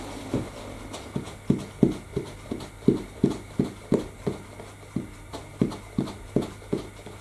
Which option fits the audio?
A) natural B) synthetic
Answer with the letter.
A